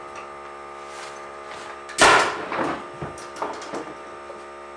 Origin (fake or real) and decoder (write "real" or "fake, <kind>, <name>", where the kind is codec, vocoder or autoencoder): real